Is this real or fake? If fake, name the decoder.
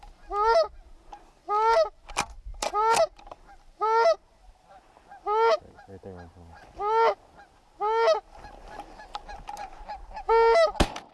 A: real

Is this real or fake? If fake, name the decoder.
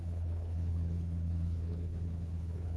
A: fake, codec, HILCodec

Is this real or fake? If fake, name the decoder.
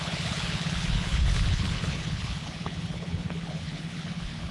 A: fake, codec, HILCodec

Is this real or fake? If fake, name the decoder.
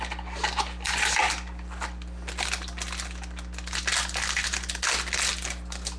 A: real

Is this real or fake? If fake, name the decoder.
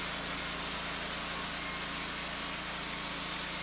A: real